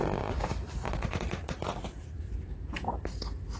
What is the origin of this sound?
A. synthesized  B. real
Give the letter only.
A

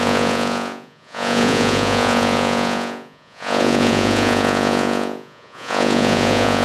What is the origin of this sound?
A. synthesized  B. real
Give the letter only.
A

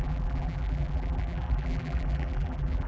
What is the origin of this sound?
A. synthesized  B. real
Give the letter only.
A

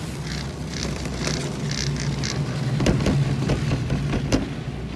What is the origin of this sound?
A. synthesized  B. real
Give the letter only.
B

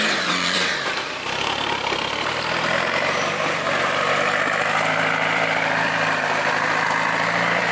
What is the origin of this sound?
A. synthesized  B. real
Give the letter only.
A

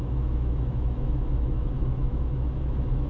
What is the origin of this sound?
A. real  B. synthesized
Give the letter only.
B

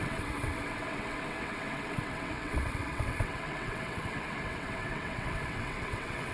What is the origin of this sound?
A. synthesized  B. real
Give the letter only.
A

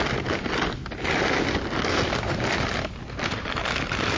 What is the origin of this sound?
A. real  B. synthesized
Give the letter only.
A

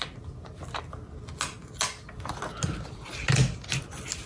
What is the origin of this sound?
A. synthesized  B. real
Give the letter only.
B